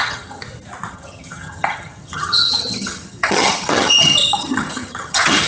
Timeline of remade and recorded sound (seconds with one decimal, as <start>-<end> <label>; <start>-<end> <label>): 0.0-0.4 remade; 0.4-0.9 recorded; 0.9-5.5 remade